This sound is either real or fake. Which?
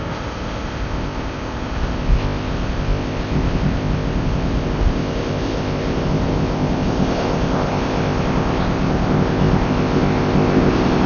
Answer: fake